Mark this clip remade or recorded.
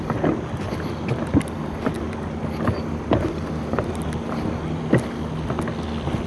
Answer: recorded